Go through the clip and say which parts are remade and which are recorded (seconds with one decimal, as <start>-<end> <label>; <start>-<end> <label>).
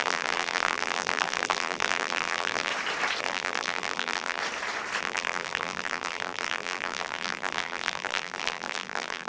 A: 0.0-2.7 remade; 2.7-3.2 recorded; 3.2-4.4 remade; 4.4-5.0 recorded; 5.0-9.3 remade